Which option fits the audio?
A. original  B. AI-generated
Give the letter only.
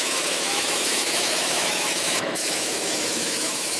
B